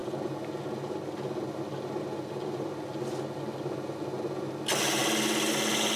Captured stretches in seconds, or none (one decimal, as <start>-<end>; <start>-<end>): 0.0-6.0